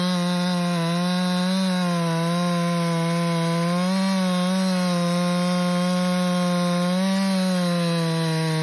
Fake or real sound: real